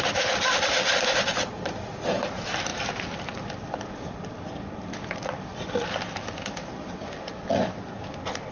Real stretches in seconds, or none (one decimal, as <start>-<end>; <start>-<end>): 0.0-2.7; 7.3-8.5